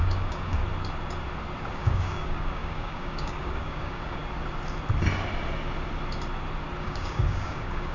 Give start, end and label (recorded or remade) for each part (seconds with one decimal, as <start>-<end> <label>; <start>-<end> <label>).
0.0-0.6 remade; 0.6-1.7 recorded; 1.7-4.2 remade; 4.2-6.8 recorded; 6.8-7.9 remade